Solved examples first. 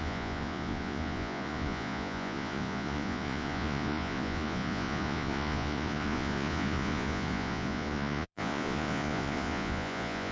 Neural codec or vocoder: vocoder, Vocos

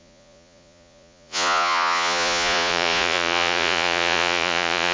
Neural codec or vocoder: vocoder, Vocos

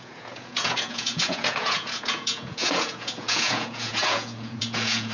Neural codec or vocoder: vocoder, Vocos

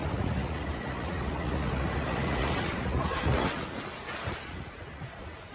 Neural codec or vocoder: vocoder, Vocos